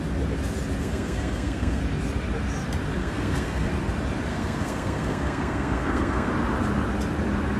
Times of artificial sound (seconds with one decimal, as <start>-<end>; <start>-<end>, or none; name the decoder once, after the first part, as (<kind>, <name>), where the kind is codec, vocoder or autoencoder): 0.8-1.8 (codec, SNAC); 3.0-3.7; 4.3-6.3

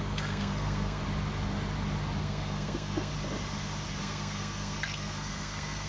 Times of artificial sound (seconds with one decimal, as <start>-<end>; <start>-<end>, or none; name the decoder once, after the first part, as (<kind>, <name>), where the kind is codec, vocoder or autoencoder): 0.0-1.0 (codec, SNAC); 2.2-3.1; 4.0-5.9